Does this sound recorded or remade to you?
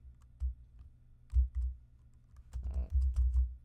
recorded